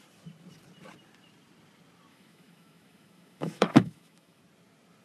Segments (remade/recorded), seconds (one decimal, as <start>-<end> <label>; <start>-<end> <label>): 0.0-2.1 recorded; 2.1-4.4 remade; 4.4-5.0 recorded